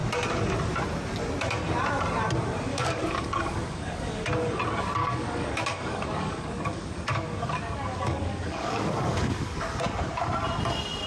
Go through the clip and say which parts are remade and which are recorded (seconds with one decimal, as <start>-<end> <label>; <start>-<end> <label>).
0.0-2.7 recorded; 2.7-4.3 remade; 4.3-5.0 recorded; 5.0-9.8 remade; 9.8-11.1 recorded